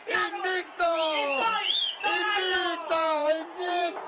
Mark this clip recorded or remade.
remade